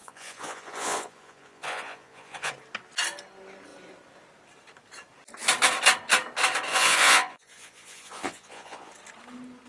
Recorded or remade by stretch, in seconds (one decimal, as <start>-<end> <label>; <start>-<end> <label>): 0.0-2.5 remade; 2.5-6.7 recorded; 6.7-8.9 remade; 8.9-9.7 recorded